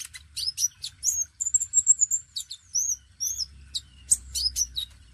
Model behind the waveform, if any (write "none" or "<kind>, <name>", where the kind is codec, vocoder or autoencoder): none